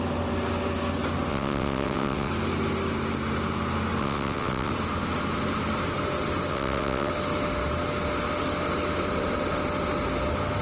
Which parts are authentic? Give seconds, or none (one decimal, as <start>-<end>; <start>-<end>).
0.0-1.3; 2.3-4.0; 4.7-6.5; 7.1-10.6